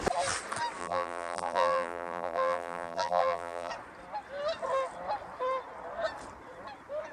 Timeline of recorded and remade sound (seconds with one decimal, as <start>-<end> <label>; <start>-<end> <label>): 0.0-0.8 recorded; 0.8-3.7 remade; 3.7-7.1 recorded